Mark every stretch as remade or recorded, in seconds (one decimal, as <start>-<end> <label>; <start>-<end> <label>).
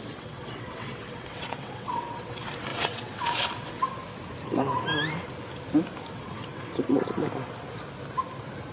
0.0-3.9 remade; 3.9-6.1 recorded; 6.1-6.7 remade; 6.7-8.7 recorded